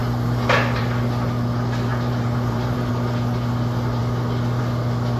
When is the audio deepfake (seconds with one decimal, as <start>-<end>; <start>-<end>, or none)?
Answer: 1.9-2.9